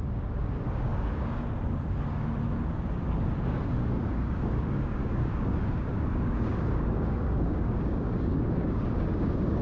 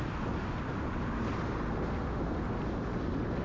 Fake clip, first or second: first